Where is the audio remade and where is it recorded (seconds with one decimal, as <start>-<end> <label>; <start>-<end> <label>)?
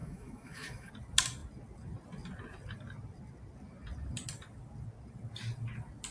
0.0-0.9 remade; 0.9-6.1 recorded